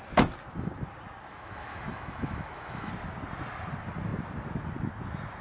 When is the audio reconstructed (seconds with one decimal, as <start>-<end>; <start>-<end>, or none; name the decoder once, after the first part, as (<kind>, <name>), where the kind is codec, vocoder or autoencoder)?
1.3-2.9 (autoencoder, DAC-VAE)